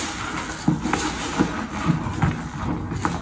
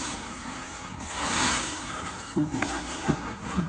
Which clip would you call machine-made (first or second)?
second